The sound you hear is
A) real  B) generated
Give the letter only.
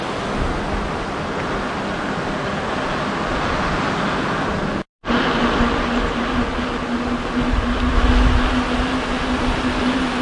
A